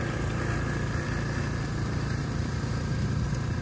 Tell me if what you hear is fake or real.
real